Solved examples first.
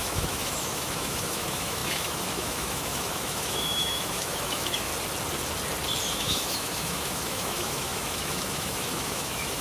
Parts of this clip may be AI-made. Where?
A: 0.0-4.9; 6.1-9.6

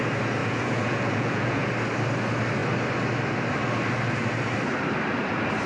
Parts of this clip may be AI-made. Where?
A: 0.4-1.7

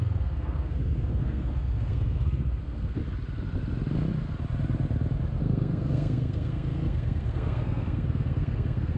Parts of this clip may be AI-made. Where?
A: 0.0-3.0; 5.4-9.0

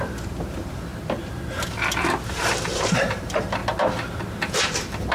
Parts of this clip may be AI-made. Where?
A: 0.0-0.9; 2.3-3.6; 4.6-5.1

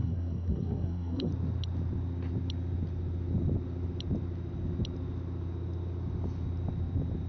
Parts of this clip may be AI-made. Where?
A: 0.0-1.3

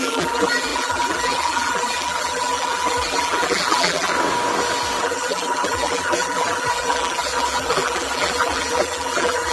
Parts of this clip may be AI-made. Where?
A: 0.0-4.1; 5.0-9.5